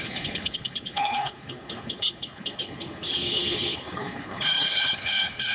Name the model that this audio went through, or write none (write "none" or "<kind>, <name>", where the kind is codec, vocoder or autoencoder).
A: codec, HILCodec